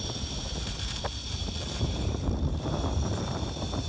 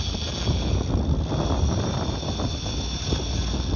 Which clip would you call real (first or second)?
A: second